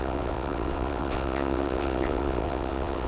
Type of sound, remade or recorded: remade